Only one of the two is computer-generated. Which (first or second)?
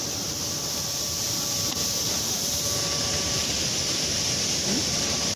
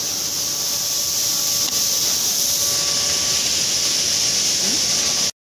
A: first